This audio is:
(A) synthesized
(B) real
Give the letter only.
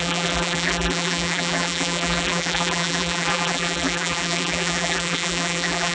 A